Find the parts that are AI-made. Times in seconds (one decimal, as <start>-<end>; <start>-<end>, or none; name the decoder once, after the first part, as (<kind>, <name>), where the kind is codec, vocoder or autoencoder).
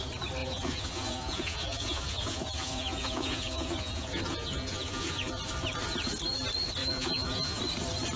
0.4-5.3 (vocoder, Vocos); 6.8-7.6